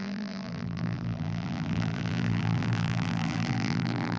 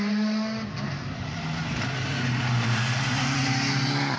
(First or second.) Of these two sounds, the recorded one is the second